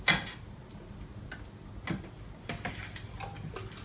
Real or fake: real